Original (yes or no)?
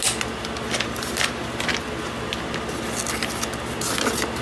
yes